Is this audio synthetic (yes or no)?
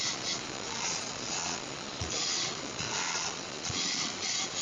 yes